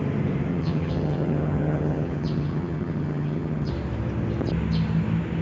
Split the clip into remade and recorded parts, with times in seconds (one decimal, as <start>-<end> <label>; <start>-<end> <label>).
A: 0.0-0.5 recorded; 0.5-3.7 remade; 3.7-5.4 recorded